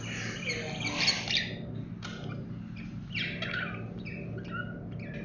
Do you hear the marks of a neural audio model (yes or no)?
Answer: no